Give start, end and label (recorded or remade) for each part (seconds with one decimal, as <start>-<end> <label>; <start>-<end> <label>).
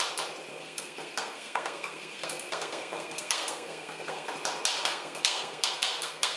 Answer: 0.0-0.5 recorded; 0.5-4.3 remade; 4.3-4.8 recorded; 4.8-6.4 remade